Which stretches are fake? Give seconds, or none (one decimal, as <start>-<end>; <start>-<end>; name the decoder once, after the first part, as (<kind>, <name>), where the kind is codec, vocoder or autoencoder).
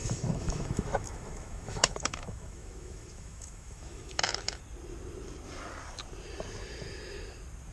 0.0-4.6 (autoencoder, DAC-VAE)